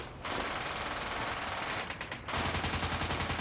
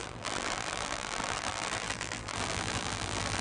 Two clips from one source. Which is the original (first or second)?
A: first